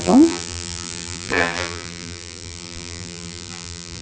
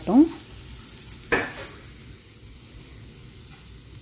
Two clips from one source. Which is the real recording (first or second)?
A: second